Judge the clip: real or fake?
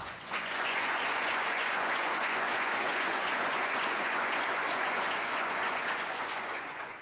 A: fake